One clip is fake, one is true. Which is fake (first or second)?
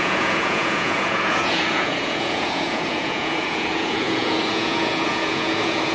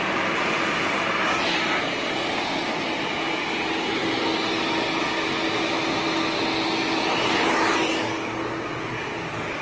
first